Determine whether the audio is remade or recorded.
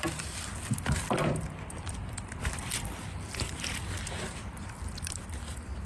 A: remade